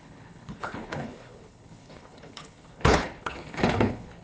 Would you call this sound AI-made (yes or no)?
yes